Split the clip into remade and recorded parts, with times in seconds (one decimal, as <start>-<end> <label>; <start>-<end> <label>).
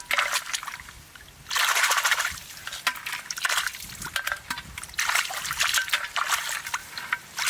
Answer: 0.0-7.5 recorded